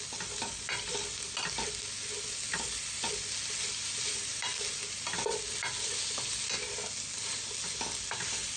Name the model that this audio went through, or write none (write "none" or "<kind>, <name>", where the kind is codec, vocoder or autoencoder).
none